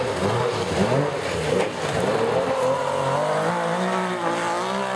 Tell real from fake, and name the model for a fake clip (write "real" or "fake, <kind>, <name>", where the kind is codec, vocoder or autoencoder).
real